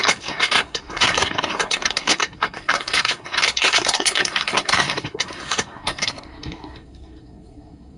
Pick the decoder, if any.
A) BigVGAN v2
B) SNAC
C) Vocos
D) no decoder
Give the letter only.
B